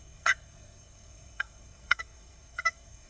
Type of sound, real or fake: fake